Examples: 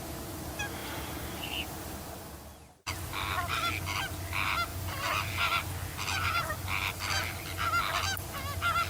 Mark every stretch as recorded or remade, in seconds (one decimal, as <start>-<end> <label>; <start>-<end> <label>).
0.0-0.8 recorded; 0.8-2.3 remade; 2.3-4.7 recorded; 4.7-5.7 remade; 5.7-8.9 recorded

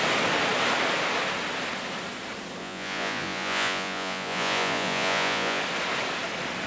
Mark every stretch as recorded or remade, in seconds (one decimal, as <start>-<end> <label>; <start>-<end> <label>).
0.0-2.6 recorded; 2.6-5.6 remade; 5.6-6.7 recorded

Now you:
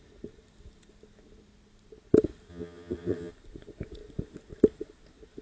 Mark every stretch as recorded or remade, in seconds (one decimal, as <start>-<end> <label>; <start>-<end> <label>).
0.0-2.5 recorded; 2.5-3.3 remade; 3.3-5.4 recorded

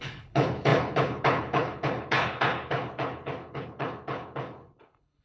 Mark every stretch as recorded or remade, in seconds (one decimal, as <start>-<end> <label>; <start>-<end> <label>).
0.0-5.2 remade

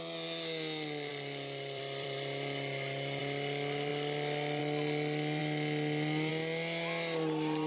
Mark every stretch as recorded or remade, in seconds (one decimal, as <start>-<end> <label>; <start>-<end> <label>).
0.0-1.1 recorded; 1.1-3.2 remade; 3.2-3.9 recorded; 3.9-4.6 remade; 4.6-7.7 recorded

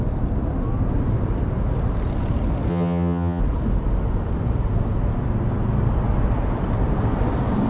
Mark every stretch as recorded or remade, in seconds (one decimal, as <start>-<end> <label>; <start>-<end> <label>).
0.0-2.7 recorded; 2.7-3.4 remade; 3.4-7.7 recorded

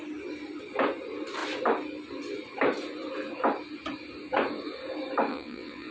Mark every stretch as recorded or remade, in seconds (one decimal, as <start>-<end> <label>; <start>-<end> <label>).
0.0-5.3 recorded; 5.3-5.9 remade